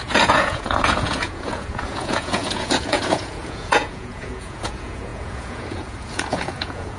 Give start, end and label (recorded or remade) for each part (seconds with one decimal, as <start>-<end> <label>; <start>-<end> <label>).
0.0-7.0 remade